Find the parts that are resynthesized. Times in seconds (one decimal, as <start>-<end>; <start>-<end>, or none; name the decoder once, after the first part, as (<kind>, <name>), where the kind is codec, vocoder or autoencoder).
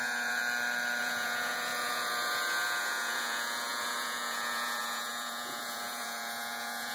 0.0-0.4 (vocoder, Vocos); 1.0-6.9